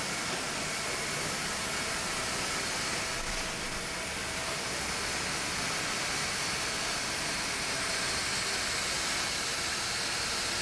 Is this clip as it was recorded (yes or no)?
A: yes